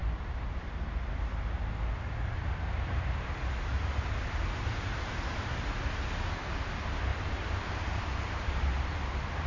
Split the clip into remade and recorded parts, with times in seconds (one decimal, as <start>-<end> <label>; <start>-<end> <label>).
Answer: 0.0-0.6 remade; 0.6-3.7 recorded; 3.7-5.5 remade; 5.5-7.1 recorded; 7.1-9.5 remade